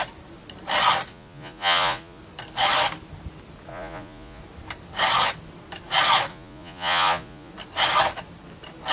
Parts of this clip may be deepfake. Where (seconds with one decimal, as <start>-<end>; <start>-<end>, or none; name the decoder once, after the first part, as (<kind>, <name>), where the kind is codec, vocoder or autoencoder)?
1.1-2.2 (vocoder, Vocos); 3.7-4.4; 6.3-7.5